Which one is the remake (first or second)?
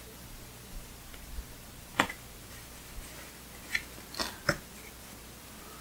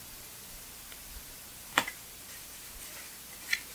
second